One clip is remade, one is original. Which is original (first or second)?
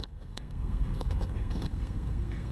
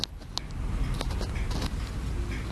second